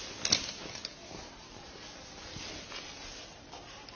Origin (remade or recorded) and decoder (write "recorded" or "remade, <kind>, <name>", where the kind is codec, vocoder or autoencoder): recorded